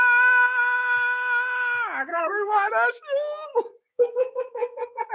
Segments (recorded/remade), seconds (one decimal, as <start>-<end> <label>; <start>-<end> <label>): 0.0-2.1 recorded; 2.1-2.7 remade; 2.7-3.9 recorded; 3.9-5.1 remade